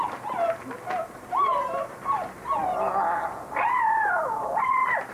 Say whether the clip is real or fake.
real